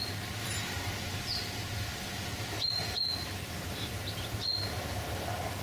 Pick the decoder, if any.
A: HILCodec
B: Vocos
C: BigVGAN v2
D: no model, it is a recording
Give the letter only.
D